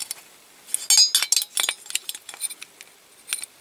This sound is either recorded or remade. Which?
recorded